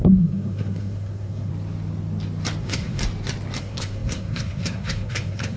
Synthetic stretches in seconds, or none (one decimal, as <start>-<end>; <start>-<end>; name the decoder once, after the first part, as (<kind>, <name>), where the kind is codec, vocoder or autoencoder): 0.0-1.5 (codec, SNAC); 2.6-3.0; 3.6-5.6